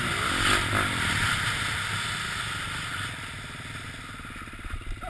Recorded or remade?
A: recorded